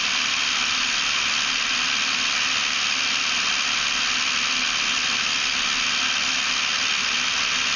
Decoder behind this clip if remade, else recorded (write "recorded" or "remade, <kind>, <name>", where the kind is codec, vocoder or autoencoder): recorded